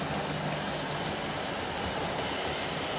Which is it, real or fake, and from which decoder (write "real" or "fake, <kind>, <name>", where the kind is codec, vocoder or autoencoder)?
real